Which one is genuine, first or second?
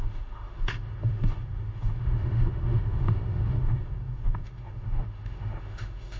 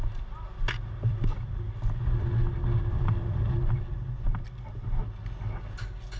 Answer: second